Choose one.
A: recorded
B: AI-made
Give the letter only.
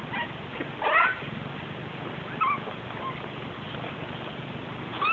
A